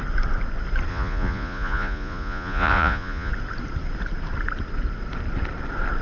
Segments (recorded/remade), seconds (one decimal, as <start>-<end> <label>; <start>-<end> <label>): 0.0-0.9 recorded; 0.9-3.3 remade; 3.3-6.0 recorded